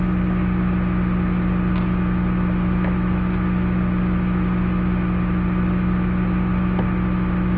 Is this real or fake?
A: real